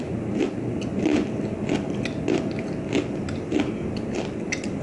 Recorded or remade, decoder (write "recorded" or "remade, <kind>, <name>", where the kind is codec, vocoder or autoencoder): recorded